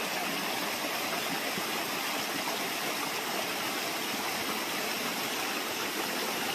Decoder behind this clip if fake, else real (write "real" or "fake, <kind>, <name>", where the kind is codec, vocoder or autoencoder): real